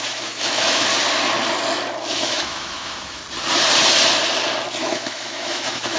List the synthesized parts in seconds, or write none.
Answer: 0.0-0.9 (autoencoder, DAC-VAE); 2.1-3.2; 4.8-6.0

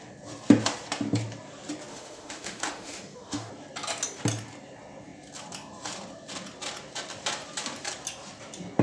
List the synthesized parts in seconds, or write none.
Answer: 1.9-3.5 (autoencoder, DAC-VAE)

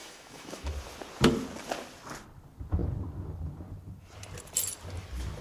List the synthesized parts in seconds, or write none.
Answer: 0.0-0.7 (autoencoder, DAC-VAE)